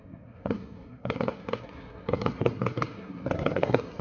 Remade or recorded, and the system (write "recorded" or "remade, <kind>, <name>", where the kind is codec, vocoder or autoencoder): remade, codec, SNAC